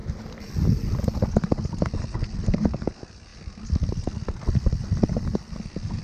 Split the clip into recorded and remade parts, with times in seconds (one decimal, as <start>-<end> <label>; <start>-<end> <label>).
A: 0.0-0.5 remade; 0.5-6.0 recorded